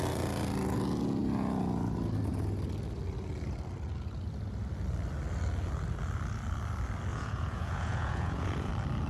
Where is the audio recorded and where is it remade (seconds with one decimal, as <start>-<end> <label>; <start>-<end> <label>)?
0.0-7.1 recorded; 7.1-8.7 remade; 8.7-9.1 recorded